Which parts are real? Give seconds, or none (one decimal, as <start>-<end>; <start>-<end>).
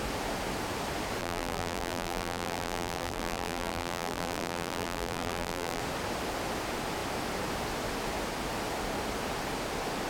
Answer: 0.0-1.2; 5.8-10.1